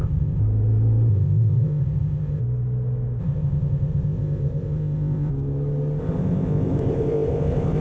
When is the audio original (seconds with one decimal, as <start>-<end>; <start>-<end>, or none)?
0.4-1.1; 2.4-3.2; 5.3-6.0